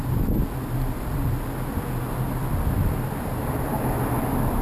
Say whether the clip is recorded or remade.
remade